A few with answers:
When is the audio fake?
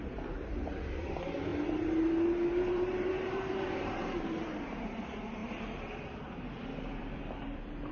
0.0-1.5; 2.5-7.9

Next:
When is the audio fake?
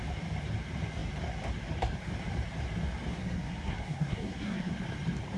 3.1-4.7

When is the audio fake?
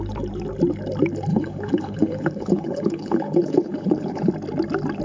1.3-4.3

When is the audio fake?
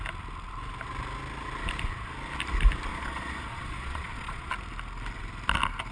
2.9-4.5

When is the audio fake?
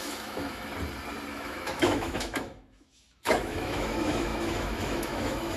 0.0-0.7; 1.3-5.6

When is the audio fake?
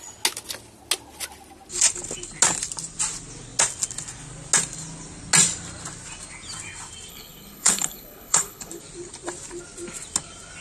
7.1-8.8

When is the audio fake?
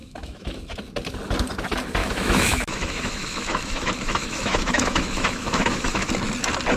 0.0-0.6; 2.0-6.1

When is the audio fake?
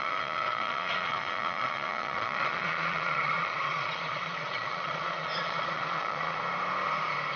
0.0-6.4